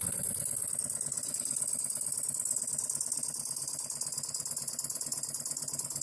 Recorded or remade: recorded